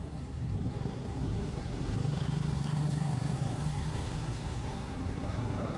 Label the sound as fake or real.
fake